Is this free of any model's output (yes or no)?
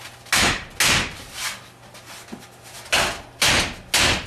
yes